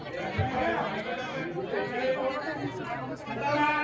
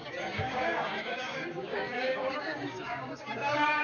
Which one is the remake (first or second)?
second